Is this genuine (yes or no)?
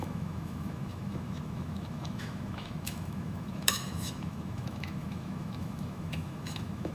no